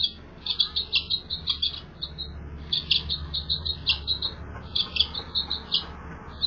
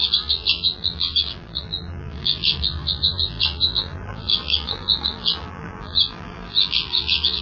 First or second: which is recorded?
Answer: first